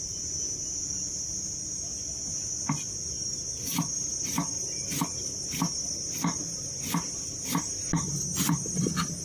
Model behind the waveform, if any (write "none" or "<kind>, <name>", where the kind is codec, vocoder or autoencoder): none